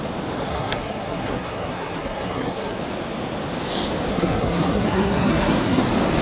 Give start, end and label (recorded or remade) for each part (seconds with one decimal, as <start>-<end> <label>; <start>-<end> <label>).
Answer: 0.0-0.5 recorded; 0.5-2.8 remade; 2.8-4.1 recorded; 4.1-5.8 remade; 5.8-6.2 recorded